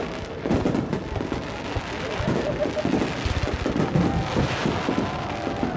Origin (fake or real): real